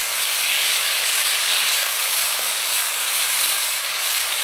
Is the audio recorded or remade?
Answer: remade